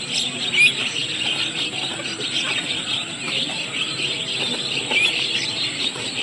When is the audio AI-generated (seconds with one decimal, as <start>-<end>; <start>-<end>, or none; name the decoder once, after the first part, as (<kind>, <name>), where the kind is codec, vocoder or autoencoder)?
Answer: none